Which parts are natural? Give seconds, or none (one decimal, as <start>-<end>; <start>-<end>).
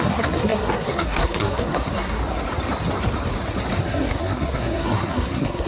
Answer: 2.2-3.8